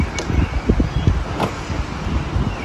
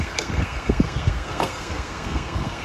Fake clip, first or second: second